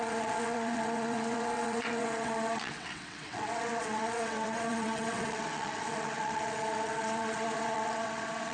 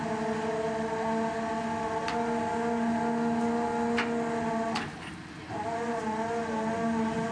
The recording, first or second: second